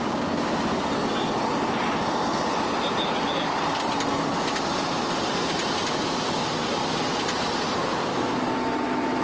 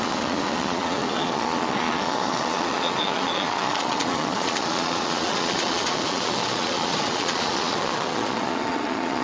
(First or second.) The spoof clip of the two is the second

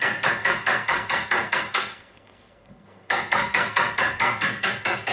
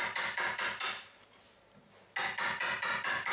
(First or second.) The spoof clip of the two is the first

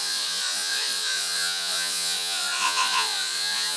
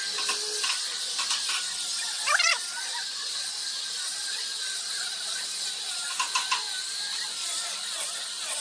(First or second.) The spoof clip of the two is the first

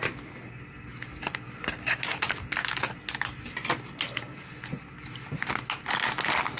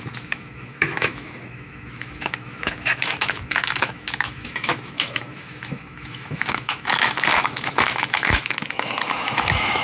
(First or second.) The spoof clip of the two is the second